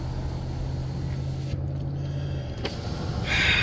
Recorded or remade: recorded